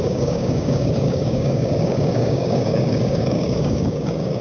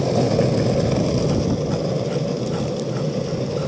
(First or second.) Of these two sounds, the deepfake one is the first